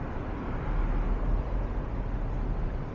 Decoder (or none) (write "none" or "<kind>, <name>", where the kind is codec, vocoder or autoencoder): none